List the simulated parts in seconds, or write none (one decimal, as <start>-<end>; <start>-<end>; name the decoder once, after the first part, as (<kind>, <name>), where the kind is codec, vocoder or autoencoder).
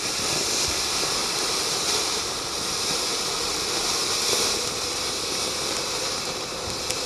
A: 1.2-1.8 (vocoder, BigVGAN v2)